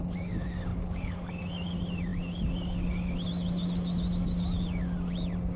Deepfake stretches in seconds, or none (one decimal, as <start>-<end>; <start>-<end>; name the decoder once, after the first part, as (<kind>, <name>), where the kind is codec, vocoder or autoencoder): 0.7-1.3 (codec, DAC)